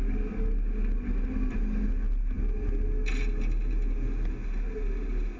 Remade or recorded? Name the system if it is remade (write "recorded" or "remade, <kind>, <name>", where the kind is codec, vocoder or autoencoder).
recorded